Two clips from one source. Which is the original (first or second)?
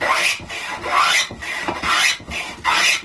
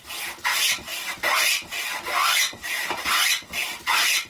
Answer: first